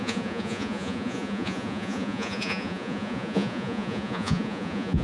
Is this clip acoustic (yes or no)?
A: no